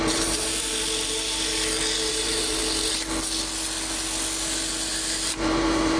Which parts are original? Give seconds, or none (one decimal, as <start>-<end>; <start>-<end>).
0.7-2.1; 2.6-5.3

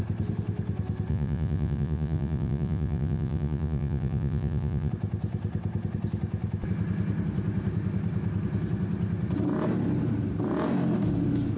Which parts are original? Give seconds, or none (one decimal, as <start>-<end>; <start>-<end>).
0.0-1.1; 4.9-11.6

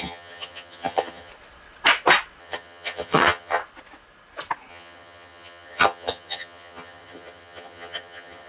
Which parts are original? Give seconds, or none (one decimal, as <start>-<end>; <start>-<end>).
1.3-2.4; 3.6-4.7

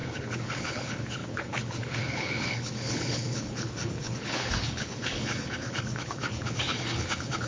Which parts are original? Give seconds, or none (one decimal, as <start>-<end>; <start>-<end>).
none

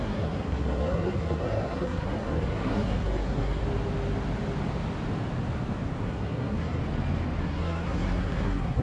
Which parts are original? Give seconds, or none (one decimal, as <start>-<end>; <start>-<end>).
3.6-6.0; 6.8-7.4

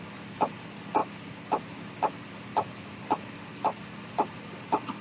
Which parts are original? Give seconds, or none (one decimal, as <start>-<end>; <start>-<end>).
0.0-5.0

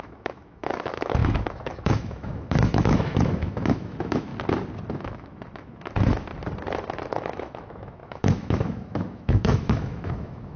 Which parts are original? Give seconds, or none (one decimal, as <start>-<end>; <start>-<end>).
4.3-4.9; 6.3-7.1

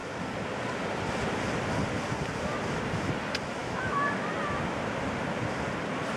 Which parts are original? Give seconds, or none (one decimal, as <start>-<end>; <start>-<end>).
0.0-3.6; 4.3-6.2